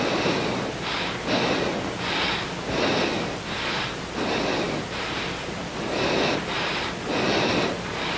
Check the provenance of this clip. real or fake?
real